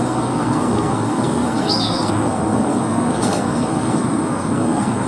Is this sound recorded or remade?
remade